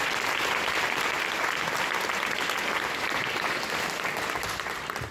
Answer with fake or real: fake